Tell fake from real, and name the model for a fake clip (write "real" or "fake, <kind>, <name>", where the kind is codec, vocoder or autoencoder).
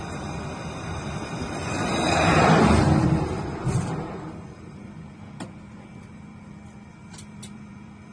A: fake, vocoder, BigVGAN v2